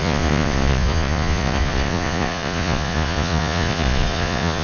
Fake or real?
fake